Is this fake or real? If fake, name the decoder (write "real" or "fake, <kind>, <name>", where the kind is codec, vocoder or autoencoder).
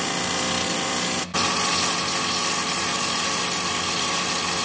real